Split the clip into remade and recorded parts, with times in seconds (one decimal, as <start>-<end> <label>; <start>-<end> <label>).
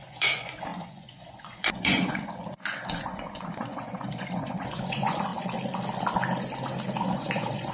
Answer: 0.0-5.3 remade; 5.3-7.0 recorded; 7.0-7.7 remade